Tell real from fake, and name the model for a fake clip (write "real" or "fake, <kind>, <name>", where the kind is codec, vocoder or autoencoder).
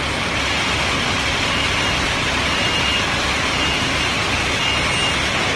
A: real